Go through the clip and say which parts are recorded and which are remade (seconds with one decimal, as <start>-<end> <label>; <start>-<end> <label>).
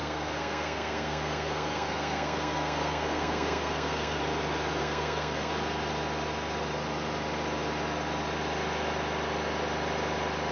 0.0-4.2 remade; 4.2-4.8 recorded; 4.8-5.5 remade; 5.5-10.5 recorded